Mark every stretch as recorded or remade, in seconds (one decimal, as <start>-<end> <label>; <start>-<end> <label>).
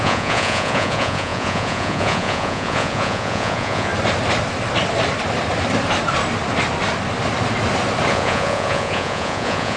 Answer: 0.0-3.9 remade; 3.9-8.1 recorded; 8.1-9.8 remade